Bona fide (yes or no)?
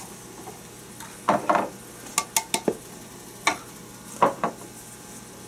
yes